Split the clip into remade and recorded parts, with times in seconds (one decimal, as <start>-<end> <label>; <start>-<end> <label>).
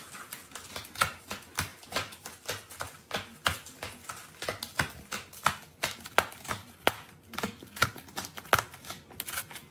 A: 0.0-1.7 recorded; 1.7-2.3 remade; 2.3-6.6 recorded; 6.6-7.1 remade; 7.1-9.7 recorded